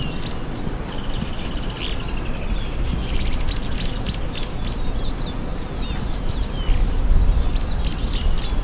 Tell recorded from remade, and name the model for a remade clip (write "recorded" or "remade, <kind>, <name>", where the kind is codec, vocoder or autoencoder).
recorded